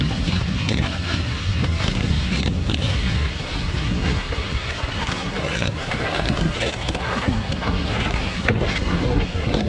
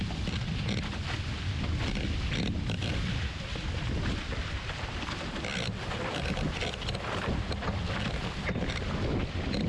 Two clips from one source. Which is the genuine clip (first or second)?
second